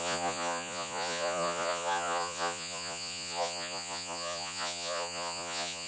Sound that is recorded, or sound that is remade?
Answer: remade